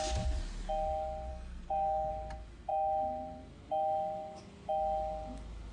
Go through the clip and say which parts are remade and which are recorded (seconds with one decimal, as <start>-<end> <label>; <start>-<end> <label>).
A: 0.0-1.3 recorded; 1.3-2.1 remade; 2.1-5.7 recorded